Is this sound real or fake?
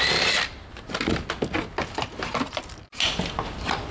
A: real